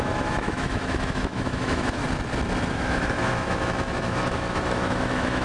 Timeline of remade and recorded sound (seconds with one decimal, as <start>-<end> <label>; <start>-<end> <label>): 0.0-2.0 remade; 2.0-2.7 recorded; 2.7-5.4 remade